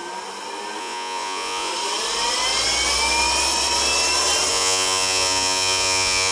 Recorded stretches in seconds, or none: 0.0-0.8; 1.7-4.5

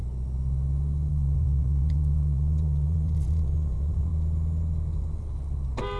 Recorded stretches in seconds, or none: 0.0-1.1; 4.1-6.0